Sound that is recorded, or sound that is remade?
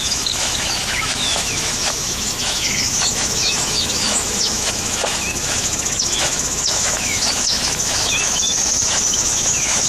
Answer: remade